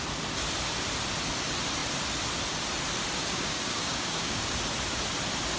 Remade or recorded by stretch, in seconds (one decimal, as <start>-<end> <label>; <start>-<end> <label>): 0.0-3.2 recorded; 3.2-4.5 remade; 4.5-5.6 recorded